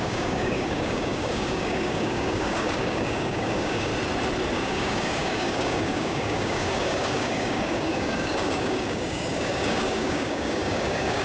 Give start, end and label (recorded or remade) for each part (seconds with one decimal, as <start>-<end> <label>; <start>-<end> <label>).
0.0-3.9 remade; 3.9-4.5 recorded; 4.5-11.2 remade